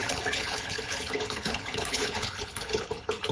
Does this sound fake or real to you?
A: fake